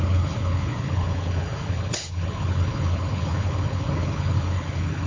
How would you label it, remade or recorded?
remade